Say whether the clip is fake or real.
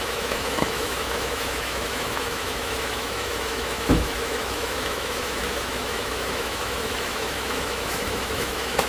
fake